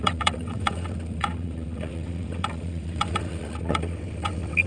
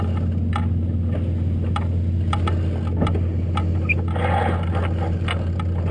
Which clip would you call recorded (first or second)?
second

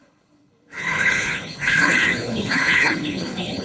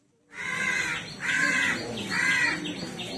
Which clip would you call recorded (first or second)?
second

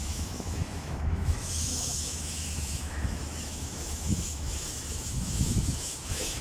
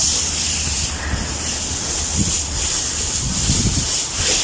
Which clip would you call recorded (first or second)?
second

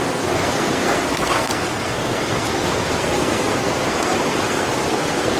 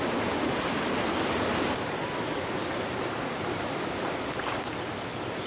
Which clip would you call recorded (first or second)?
second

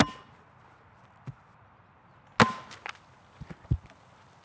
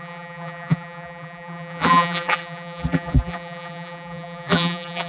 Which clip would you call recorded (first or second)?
first